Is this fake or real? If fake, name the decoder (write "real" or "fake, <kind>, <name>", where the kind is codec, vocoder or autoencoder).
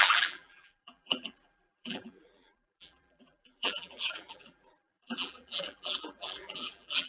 fake, vocoder, BigVGAN v2